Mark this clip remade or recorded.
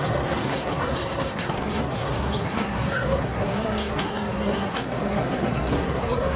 remade